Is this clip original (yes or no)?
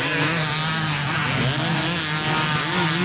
yes